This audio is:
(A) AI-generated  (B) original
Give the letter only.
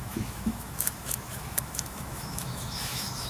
A